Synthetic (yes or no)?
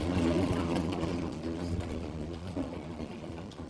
yes